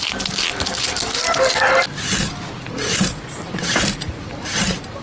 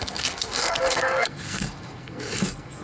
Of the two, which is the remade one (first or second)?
second